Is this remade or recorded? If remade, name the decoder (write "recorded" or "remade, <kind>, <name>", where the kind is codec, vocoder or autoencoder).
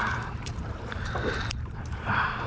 remade, vocoder, BigVGAN v2